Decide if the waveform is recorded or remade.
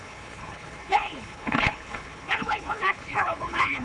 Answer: remade